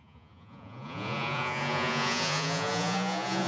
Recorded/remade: remade